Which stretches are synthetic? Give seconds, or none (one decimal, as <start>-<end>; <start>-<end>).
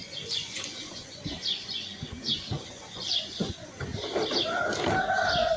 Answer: 0.0-3.9